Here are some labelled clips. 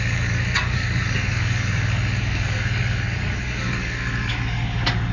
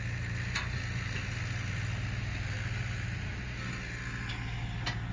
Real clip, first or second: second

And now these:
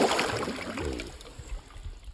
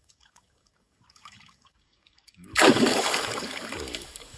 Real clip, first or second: first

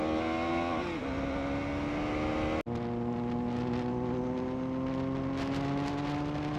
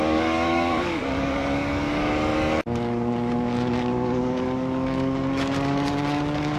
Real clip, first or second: first